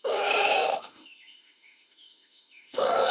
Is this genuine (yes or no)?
no